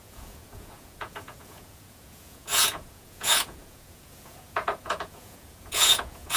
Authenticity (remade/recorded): remade